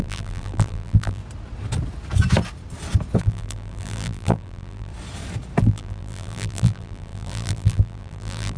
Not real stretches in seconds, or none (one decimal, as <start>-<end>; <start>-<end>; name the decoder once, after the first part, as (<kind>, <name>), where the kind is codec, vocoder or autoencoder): 0.0-1.2 (vocoder, BigVGAN v2); 3.2-4.9; 5.6-8.6